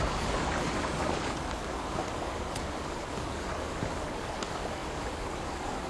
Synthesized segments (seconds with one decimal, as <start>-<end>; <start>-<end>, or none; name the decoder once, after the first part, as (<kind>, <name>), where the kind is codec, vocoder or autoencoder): 0.0-5.9 (codec, DAC)